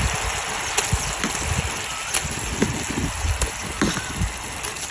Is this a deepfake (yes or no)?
no